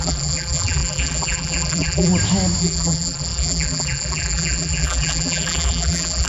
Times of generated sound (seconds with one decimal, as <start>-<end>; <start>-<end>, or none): 0.0-2.1; 2.6-6.3